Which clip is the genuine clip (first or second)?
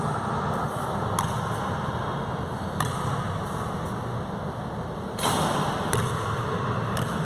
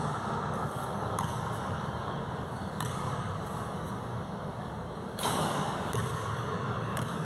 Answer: first